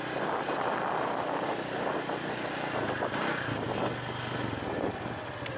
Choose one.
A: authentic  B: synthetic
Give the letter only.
A